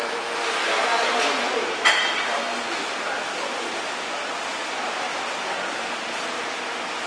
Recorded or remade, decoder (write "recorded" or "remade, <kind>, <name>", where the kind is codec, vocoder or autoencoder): recorded